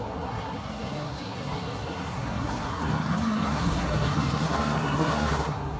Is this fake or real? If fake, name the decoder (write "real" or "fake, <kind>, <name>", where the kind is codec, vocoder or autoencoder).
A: fake, codec, SNAC